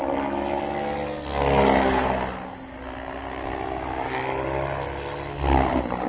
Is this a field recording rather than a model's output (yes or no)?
yes